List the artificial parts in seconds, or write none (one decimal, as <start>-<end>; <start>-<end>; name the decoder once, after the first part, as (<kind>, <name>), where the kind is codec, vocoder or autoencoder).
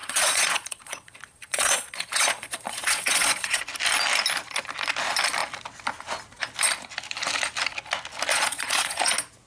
0.0-3.6 (vocoder, Vocos); 8.3-9.0